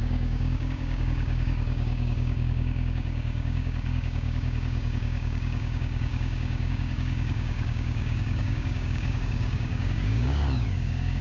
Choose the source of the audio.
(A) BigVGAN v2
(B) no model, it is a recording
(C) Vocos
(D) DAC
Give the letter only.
D